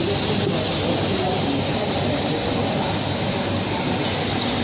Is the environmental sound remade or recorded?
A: recorded